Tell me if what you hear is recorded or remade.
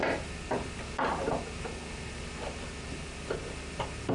recorded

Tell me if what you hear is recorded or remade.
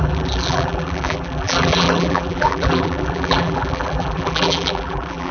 remade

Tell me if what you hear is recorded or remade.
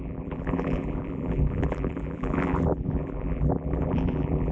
remade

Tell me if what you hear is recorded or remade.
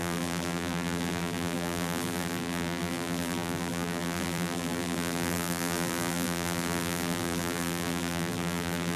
remade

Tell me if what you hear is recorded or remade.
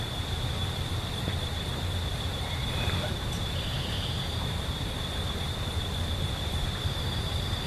remade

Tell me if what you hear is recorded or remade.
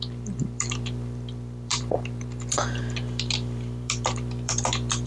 remade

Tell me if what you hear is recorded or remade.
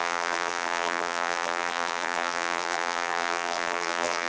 remade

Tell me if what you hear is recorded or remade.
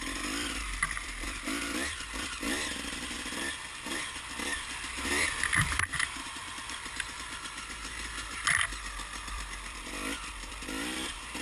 remade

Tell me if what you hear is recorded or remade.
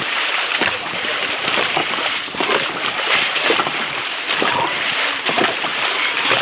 remade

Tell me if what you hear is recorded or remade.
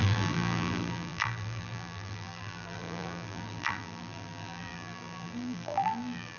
remade